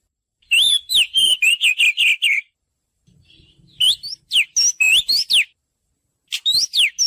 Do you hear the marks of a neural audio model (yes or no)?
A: no